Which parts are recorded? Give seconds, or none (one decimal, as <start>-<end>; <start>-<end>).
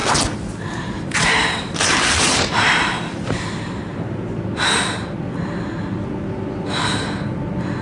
0.0-0.7; 3.9-7.8